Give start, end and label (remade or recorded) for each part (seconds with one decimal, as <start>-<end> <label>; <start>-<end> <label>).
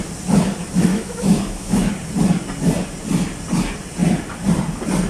0.0-0.9 recorded; 0.9-1.9 remade; 1.9-5.1 recorded